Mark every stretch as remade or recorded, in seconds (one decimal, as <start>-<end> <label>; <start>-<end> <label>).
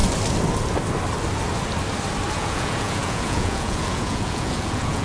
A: 0.0-2.3 recorded; 2.3-5.0 remade